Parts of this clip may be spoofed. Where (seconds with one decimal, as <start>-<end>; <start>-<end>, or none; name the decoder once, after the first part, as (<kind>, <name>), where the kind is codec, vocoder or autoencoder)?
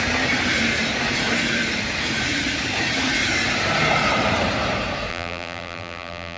5.1-6.4 (vocoder, BigVGAN v2)